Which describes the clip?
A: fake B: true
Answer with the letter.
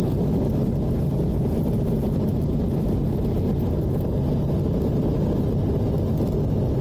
B